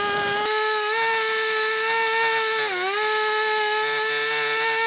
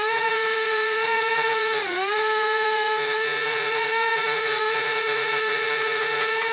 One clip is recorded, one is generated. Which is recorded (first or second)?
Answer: first